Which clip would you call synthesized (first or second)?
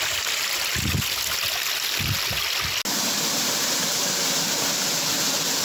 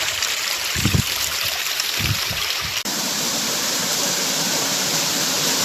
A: second